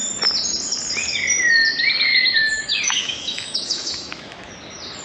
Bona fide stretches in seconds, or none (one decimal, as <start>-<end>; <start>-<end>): 0.0-2.1; 4.5-5.0